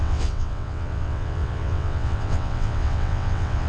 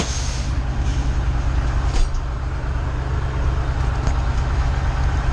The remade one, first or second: first